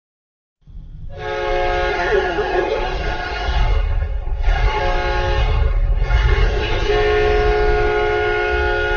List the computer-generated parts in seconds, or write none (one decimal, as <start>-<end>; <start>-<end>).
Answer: 1.9-4.8; 5.4-6.9

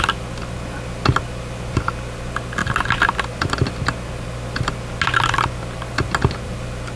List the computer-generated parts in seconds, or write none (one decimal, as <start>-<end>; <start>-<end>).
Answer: none

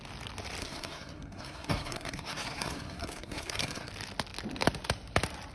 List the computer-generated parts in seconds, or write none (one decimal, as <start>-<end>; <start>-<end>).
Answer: 0.6-3.9

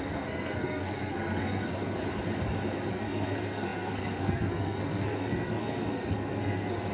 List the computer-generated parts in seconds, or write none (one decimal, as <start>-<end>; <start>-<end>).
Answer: 0.0-2.0; 2.9-6.9

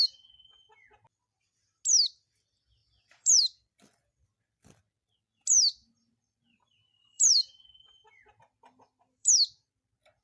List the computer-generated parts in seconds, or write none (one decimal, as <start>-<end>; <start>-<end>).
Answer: 2.8-4.8; 5.8-9.3

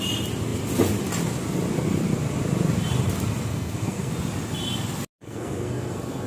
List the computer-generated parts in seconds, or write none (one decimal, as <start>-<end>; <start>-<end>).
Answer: 3.5-4.1; 5.2-6.3

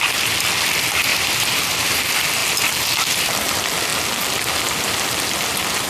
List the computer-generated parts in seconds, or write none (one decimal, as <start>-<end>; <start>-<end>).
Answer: 1.1-2.0

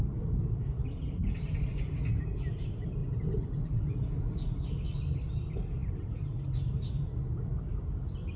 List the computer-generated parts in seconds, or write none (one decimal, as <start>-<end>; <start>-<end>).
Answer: 0.4-1.3; 3.0-4.3